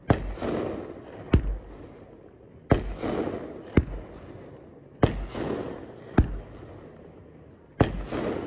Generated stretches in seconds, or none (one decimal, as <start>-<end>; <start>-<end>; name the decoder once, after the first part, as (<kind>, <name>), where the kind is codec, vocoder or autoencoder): 5.6-6.6 (vocoder, BigVGAN v2)